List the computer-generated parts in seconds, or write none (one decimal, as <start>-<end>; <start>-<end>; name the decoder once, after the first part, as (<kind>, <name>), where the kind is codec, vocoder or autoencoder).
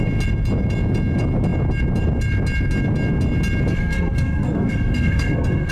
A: 3.7-5.7 (codec, SNAC)